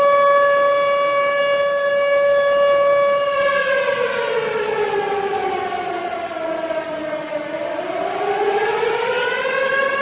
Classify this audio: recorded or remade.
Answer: recorded